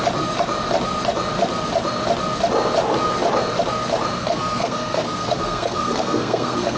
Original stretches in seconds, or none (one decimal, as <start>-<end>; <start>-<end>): 0.0-4.2